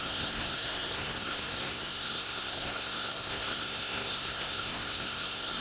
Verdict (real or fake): fake